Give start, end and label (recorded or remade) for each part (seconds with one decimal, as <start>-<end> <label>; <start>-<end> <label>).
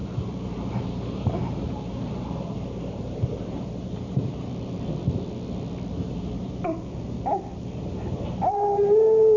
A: 0.0-4.5 remade; 4.5-5.9 recorded; 5.9-9.4 remade